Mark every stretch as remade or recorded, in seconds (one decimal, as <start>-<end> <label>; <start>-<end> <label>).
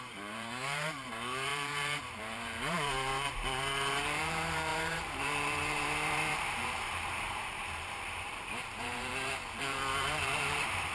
0.0-10.9 remade